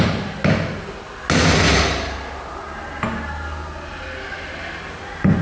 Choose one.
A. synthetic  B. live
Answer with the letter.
B